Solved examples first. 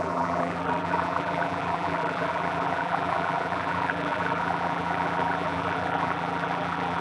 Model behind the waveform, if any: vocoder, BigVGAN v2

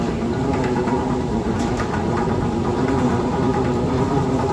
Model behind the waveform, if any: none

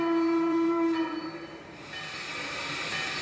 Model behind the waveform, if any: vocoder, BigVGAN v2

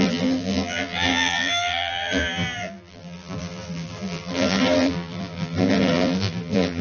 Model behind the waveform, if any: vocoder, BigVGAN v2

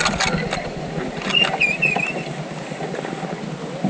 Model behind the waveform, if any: none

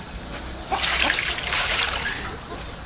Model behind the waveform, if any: vocoder, BigVGAN v2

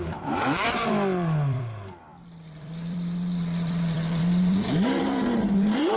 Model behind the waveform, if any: vocoder, BigVGAN v2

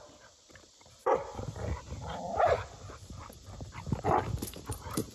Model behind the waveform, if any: vocoder, BigVGAN v2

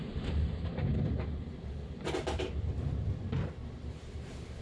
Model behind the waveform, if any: vocoder, BigVGAN v2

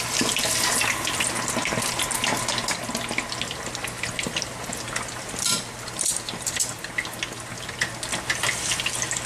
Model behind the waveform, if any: none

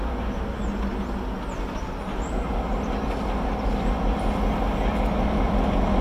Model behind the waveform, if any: none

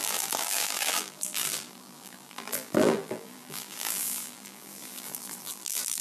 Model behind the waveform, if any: vocoder, BigVGAN v2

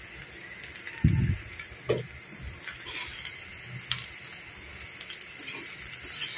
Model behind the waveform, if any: none